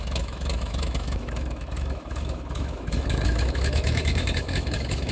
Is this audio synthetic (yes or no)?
yes